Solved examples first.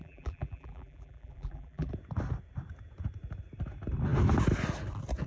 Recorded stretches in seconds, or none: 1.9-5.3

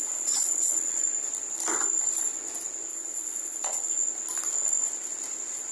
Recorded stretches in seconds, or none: 1.0-2.9; 3.9-5.7

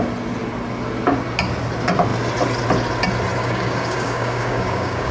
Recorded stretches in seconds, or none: 0.0-3.4

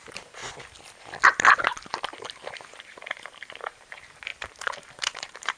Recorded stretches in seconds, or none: 0.4-2.8

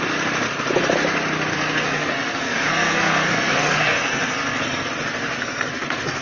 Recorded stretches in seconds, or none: 0.0-1.5; 4.9-5.4

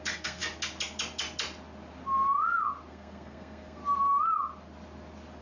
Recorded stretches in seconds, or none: 0.4-2.9; 3.8-5.4